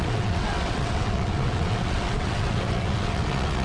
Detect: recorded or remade remade